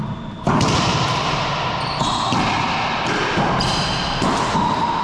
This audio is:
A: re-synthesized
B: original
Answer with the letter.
B